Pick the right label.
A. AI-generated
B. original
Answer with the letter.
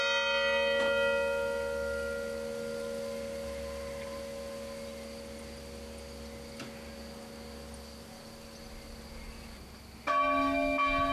B